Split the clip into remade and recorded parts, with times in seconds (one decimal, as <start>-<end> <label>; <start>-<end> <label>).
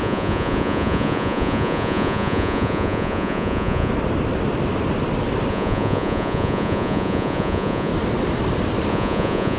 0.0-3.9 remade; 3.9-5.5 recorded; 5.5-7.9 remade; 7.9-8.9 recorded; 8.9-9.6 remade